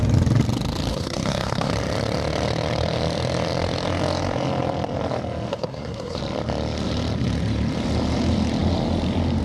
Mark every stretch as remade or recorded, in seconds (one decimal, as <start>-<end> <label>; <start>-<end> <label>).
0.0-0.9 recorded; 0.9-1.7 remade; 1.7-5.5 recorded; 5.5-6.2 remade; 6.2-9.4 recorded

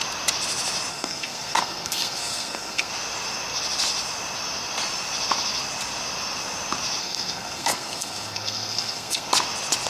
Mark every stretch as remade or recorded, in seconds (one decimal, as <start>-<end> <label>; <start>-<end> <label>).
0.0-0.9 recorded; 0.9-2.9 remade; 2.9-7.0 recorded; 7.0-9.3 remade; 9.3-9.9 recorded

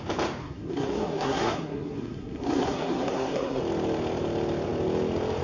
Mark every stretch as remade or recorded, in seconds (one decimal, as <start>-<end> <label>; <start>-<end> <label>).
0.0-0.4 recorded; 0.4-3.6 remade; 3.6-5.4 recorded

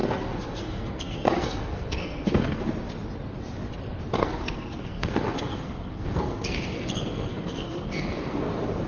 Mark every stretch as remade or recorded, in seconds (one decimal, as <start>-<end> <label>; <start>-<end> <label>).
0.0-2.6 remade; 2.6-4.2 recorded; 4.2-8.5 remade; 8.5-8.9 recorded

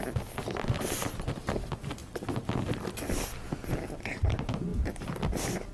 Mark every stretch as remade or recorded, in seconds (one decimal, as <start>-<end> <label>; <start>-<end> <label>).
0.0-5.7 recorded

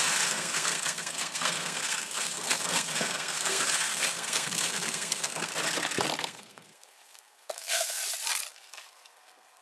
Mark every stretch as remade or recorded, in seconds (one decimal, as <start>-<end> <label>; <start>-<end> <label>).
0.0-5.5 remade; 5.5-6.2 recorded; 6.2-8.0 remade; 8.0-8.5 recorded; 8.5-9.6 remade

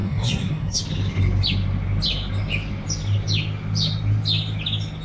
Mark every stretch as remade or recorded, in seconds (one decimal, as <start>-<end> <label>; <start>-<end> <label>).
0.0-0.8 remade; 0.8-5.0 recorded

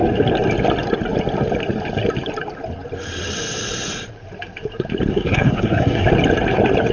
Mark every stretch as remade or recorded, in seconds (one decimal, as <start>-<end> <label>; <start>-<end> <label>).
0.0-5.1 recorded; 5.1-6.1 remade; 6.1-6.9 recorded